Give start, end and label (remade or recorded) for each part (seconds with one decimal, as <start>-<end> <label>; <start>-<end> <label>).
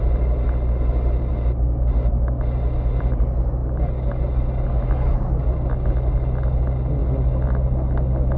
0.0-8.4 recorded